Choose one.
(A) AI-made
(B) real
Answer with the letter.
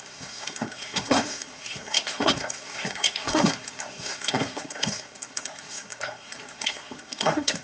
A